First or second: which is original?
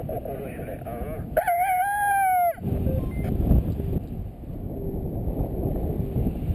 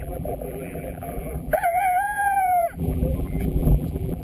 first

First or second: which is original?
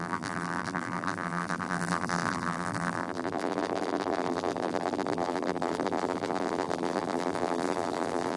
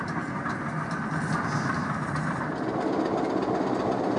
second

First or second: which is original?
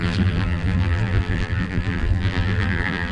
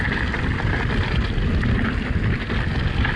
second